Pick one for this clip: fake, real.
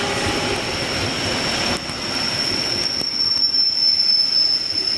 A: real